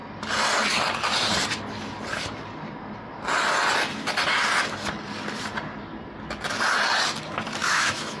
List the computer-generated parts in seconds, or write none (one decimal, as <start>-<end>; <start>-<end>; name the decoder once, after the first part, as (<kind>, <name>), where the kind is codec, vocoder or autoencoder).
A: 7.6-8.2 (autoencoder, DAC-VAE)